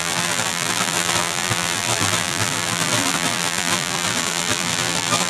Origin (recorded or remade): remade